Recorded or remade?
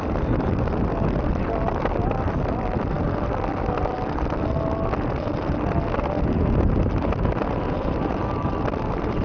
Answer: recorded